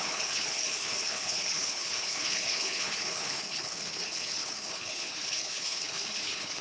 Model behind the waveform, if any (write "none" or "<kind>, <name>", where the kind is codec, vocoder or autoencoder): codec, HILCodec